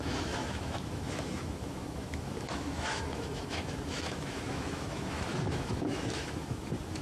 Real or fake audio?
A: fake